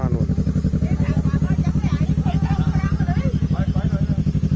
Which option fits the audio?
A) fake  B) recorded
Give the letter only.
B